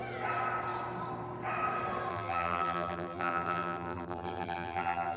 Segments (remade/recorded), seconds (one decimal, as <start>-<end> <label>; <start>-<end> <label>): 0.0-2.1 recorded; 2.1-5.2 remade